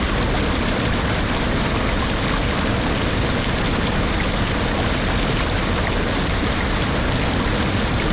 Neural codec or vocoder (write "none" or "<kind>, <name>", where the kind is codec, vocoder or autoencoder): none